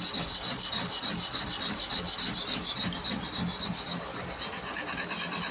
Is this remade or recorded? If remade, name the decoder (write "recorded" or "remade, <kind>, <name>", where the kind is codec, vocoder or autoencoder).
recorded